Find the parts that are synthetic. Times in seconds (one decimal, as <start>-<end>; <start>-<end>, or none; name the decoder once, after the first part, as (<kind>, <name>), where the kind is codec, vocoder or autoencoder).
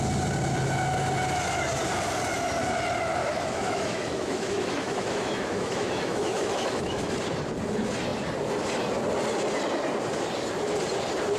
3.2-7.1 (autoencoder, DAC-VAE)